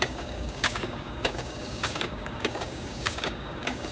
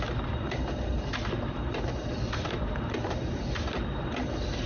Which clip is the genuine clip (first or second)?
second